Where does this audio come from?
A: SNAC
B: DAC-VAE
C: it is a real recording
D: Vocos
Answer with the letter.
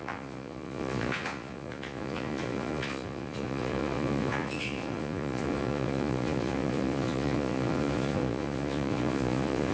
D